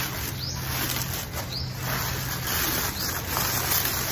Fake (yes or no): no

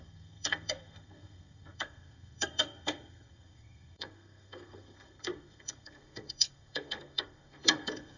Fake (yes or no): yes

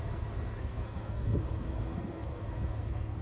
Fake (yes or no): yes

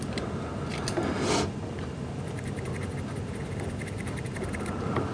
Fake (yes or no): no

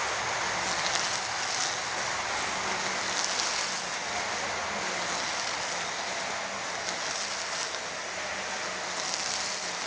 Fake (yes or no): no